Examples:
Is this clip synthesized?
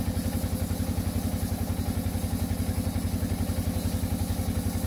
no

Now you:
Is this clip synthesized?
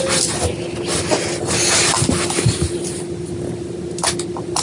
no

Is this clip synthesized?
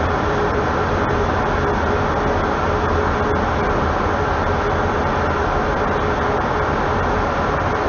no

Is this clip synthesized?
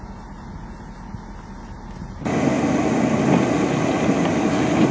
no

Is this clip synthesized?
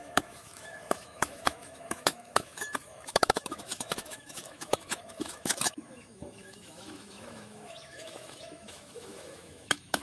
yes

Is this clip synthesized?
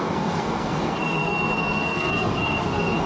yes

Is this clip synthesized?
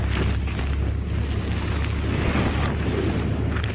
no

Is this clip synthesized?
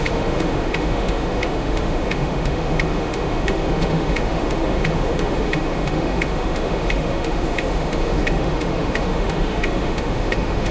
yes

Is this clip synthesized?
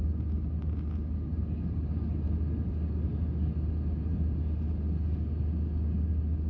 no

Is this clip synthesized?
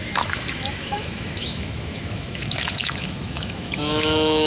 yes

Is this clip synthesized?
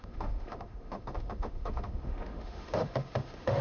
yes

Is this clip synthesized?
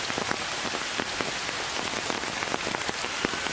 no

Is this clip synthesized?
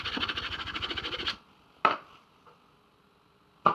no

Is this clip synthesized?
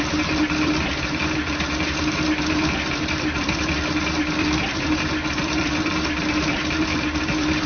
yes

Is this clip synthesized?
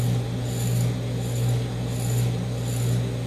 no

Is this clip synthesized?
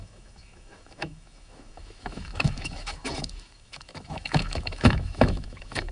yes